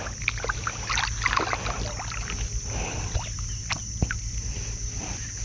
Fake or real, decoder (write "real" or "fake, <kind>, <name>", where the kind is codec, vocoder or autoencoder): real